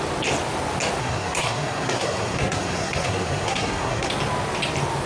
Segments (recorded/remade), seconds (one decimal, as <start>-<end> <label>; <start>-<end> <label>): 0.0-1.0 recorded; 1.0-4.1 remade; 4.1-5.1 recorded